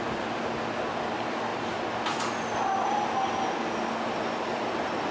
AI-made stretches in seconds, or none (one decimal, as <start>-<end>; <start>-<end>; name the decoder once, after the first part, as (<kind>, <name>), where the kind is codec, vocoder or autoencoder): none